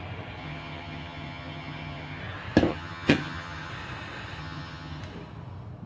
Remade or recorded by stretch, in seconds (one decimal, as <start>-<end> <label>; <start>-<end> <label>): 0.0-0.4 recorded; 0.4-2.2 remade; 2.2-2.7 recorded; 2.7-3.7 remade; 3.7-4.4 recorded; 4.4-5.0 remade; 5.0-5.9 recorded

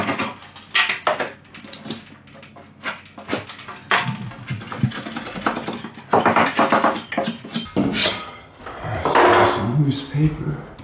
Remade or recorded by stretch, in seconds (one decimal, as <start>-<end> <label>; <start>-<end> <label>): 0.0-8.0 recorded; 8.0-8.6 remade; 8.6-10.8 recorded

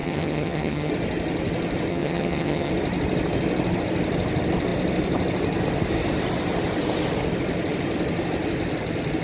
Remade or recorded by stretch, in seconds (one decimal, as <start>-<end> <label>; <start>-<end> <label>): 0.0-0.9 remade; 0.9-1.9 recorded; 1.9-2.7 remade; 2.7-9.2 recorded

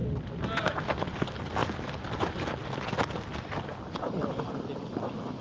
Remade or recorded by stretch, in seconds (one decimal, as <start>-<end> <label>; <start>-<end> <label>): 0.0-5.4 recorded

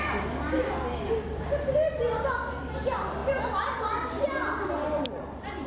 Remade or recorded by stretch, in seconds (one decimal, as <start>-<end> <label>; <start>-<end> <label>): 0.0-5.7 recorded

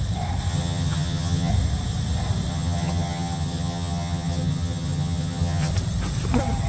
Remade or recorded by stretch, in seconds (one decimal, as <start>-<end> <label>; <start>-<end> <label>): 0.0-0.5 recorded; 0.5-1.5 remade; 1.5-2.5 recorded; 2.5-5.7 remade; 5.7-6.7 recorded